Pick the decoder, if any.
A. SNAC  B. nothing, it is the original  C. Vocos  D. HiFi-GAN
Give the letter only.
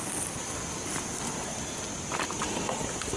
B